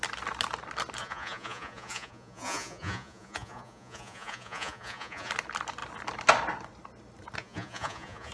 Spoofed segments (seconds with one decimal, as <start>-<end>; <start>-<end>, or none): 1.0-5.3; 7.4-8.3